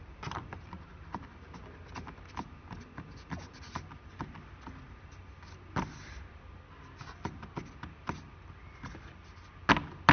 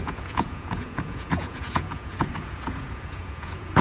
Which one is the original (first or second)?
first